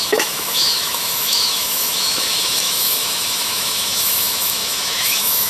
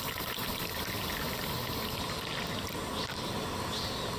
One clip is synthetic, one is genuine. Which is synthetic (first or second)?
first